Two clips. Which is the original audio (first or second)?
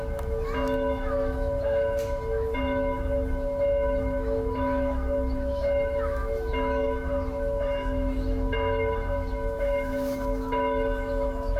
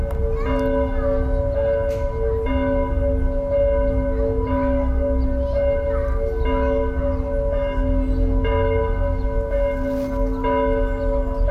second